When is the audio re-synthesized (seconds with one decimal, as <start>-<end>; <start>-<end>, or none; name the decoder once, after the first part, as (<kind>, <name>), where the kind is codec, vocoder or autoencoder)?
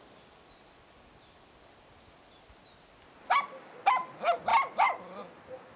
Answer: none